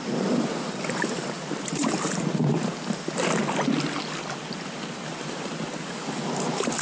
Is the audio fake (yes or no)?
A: no